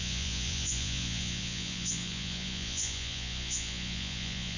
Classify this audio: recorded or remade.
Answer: remade